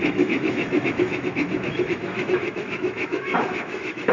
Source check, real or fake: fake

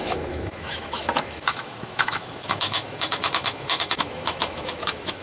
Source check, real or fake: fake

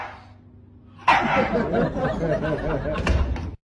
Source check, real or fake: real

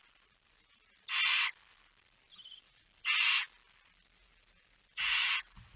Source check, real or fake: real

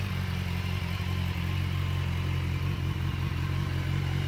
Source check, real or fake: real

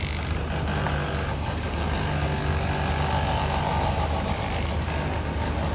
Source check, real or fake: real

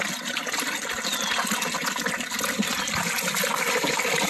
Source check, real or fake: real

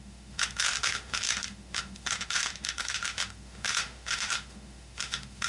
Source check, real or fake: fake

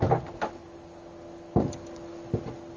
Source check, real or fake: real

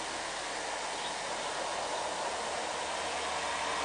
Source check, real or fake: real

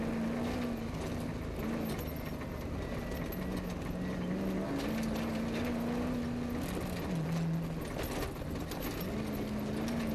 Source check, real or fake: real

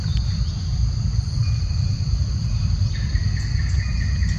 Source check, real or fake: real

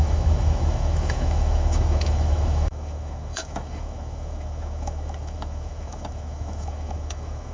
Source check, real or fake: fake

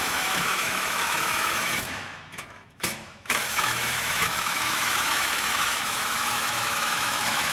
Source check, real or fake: fake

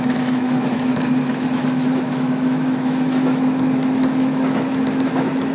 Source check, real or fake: fake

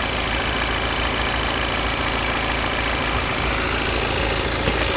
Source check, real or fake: real